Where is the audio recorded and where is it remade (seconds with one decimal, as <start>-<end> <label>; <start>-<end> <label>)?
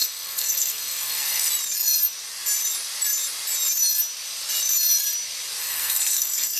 0.0-1.5 remade; 1.5-5.6 recorded; 5.6-6.6 remade